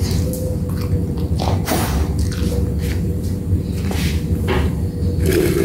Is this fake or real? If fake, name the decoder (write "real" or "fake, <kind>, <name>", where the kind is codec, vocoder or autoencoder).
real